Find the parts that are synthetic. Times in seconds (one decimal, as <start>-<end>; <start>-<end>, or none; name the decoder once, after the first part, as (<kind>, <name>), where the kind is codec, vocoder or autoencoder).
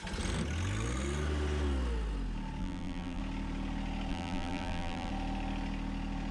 2.6-3.2 (vocoder, BigVGAN v2); 4.1-5.1